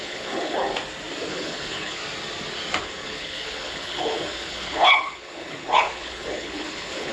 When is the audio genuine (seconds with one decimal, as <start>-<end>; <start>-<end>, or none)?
0.7-1.3; 2.0-2.8

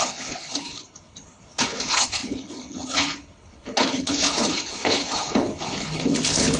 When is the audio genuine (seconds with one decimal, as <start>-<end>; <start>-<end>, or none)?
none

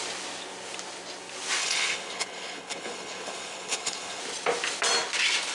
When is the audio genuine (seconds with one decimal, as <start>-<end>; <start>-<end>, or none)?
0.0-1.6; 4.2-5.5

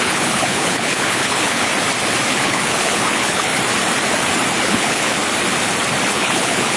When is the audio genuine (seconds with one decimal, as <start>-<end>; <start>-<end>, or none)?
1.7-2.3; 3.5-4.6; 5.2-6.1

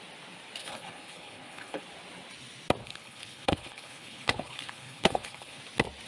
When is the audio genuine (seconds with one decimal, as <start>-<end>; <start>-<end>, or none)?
0.0-0.6; 1.8-2.8; 5.6-6.1

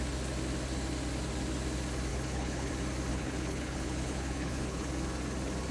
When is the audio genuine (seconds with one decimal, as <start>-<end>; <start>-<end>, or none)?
0.0-2.1; 2.7-3.1; 4.9-5.7

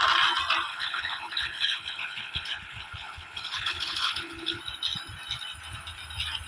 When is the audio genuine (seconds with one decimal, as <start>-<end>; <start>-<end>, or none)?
0.0-0.7; 4.6-6.5

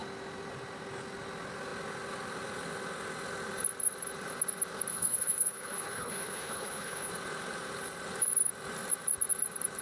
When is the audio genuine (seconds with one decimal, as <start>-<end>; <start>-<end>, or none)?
0.0-4.9; 7.1-9.8